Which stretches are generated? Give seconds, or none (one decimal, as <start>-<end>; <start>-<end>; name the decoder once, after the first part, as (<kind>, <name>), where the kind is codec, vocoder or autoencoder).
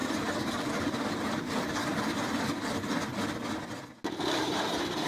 0.0-1.8 (vocoder, BigVGAN v2); 4.1-5.1